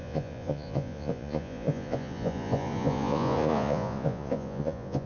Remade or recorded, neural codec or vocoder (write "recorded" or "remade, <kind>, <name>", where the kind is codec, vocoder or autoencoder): remade, vocoder, Vocos